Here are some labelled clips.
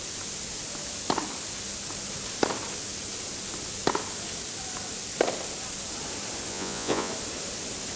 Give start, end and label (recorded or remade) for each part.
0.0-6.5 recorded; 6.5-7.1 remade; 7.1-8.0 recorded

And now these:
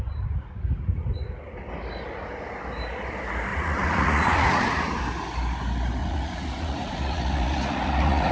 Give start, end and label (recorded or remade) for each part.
0.0-3.5 recorded; 3.5-5.0 remade; 5.0-6.0 recorded; 6.0-8.3 remade

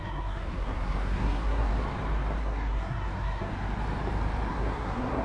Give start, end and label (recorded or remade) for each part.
0.0-1.7 remade; 1.7-2.4 recorded; 2.4-3.5 remade; 3.5-4.5 recorded; 4.5-5.2 remade

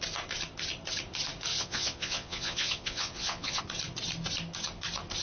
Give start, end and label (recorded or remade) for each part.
0.0-1.5 recorded; 1.5-3.6 remade; 3.6-5.2 recorded

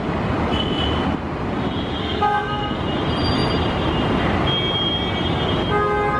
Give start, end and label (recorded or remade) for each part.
0.0-2.0 recorded; 2.0-2.8 remade; 2.8-6.2 recorded

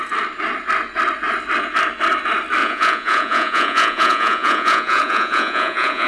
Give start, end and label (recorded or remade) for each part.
0.0-2.6 recorded; 2.6-6.1 remade

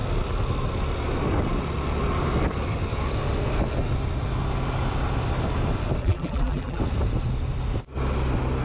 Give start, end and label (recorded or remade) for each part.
0.0-6.0 recorded; 6.0-6.8 remade; 6.8-8.6 recorded